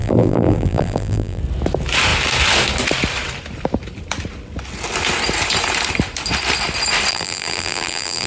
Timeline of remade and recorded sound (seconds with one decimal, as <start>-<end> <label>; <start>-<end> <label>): 0.0-1.4 remade; 1.4-7.1 recorded; 7.1-8.3 remade